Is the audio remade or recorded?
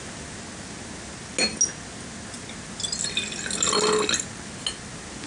recorded